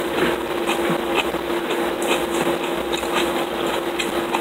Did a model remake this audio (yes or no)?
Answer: no